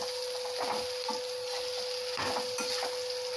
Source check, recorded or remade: recorded